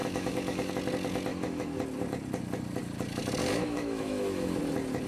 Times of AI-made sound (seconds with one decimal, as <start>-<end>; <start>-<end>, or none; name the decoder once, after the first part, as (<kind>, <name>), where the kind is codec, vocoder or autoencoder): 0.0-0.7 (autoencoder, DAC-VAE); 1.3-1.8; 3.4-4.6